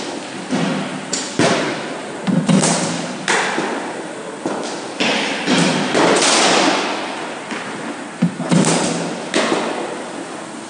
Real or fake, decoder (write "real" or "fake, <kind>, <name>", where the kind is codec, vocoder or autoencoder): real